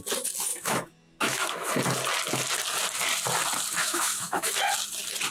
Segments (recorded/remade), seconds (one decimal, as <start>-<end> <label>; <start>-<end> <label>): 0.0-0.5 recorded; 0.5-1.7 remade; 1.7-3.8 recorded; 3.8-4.5 remade; 4.5-5.3 recorded